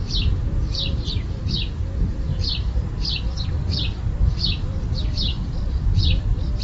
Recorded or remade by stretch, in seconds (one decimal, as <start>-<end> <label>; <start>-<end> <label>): 0.0-2.3 recorded; 2.3-6.6 remade